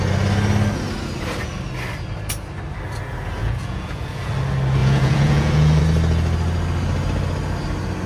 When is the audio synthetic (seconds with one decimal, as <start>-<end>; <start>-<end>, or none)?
3.4-4.3; 4.8-5.8

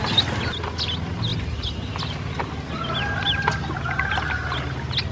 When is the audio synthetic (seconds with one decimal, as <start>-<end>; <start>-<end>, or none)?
none

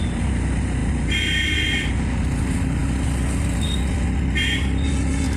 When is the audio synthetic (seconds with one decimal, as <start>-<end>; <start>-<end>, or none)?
none

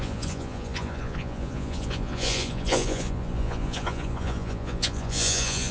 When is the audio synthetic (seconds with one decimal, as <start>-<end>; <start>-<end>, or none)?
0.0-5.7

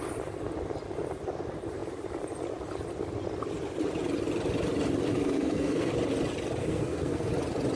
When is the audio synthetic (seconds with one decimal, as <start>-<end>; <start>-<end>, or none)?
5.1-5.9; 6.6-7.3

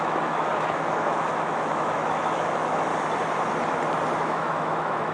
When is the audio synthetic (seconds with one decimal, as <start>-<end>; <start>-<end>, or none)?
0.0-2.9; 4.2-5.1